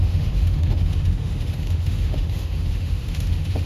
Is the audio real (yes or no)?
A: no